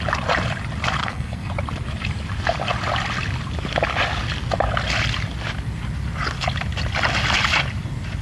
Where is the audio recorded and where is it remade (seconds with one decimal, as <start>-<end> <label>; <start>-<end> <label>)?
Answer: 0.0-1.0 recorded; 1.0-1.5 remade; 1.5-8.2 recorded